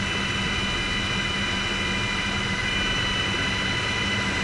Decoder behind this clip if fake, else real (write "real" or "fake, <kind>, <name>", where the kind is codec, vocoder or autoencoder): real